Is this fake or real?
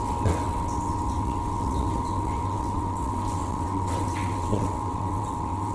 fake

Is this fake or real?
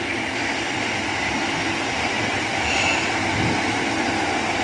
real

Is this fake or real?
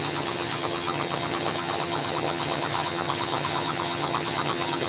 fake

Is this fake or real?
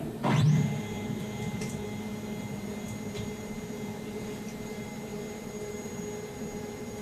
fake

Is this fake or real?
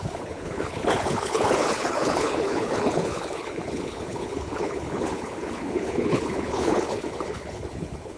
fake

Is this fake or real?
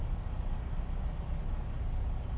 real